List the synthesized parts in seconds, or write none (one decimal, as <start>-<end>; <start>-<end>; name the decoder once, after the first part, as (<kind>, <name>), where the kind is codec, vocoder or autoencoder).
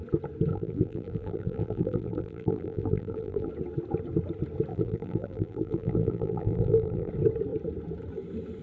0.5-3.5 (vocoder, BigVGAN v2); 4.7-7.1